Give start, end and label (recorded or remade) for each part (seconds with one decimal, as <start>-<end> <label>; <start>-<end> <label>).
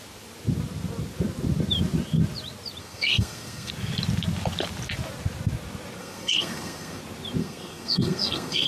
0.0-2.8 recorded; 2.8-3.7 remade; 3.7-6.0 recorded; 6.0-7.0 remade; 7.0-7.4 recorded; 7.4-8.7 remade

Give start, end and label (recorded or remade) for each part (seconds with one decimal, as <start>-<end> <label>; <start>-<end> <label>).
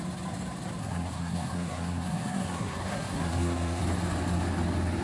0.0-0.8 recorded; 0.8-3.8 remade; 3.8-5.0 recorded